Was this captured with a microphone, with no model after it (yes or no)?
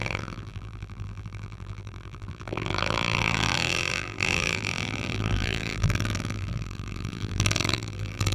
no